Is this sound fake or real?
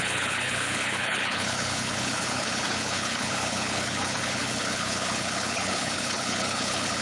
fake